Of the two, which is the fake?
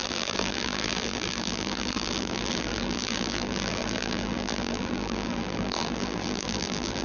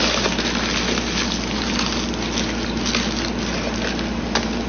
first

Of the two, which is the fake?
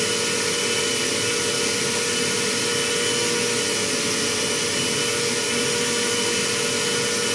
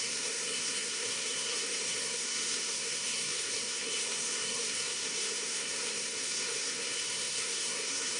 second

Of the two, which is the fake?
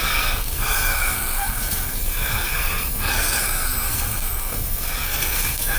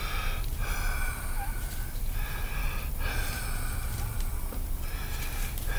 first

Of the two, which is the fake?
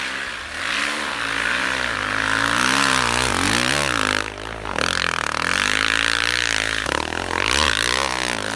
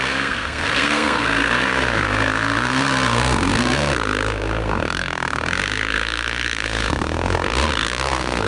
second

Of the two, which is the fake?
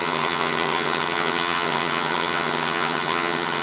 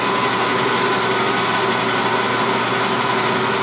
first